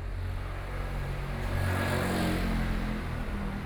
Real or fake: real